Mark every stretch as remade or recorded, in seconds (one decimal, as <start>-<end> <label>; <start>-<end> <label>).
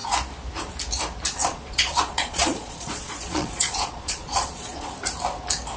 0.0-1.4 recorded; 1.4-4.9 remade; 4.9-5.8 recorded